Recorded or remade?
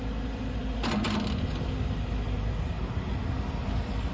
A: recorded